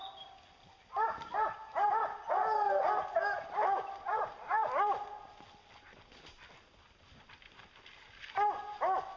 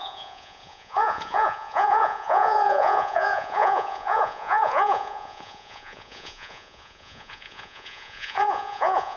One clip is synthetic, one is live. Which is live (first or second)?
first